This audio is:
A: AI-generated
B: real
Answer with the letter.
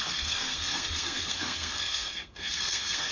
A